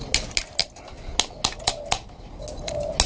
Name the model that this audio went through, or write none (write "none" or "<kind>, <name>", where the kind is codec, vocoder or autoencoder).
none